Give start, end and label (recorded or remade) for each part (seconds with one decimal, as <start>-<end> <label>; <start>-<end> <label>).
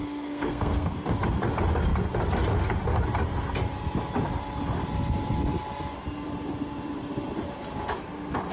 0.0-1.0 remade; 1.0-8.5 recorded